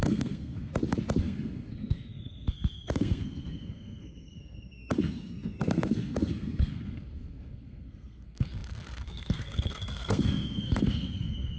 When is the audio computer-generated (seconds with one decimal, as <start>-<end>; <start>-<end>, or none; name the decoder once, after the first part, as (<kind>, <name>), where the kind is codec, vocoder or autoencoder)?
0.0-0.7 (codec, SNAC); 1.2-11.6